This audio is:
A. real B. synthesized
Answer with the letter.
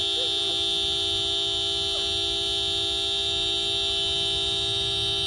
A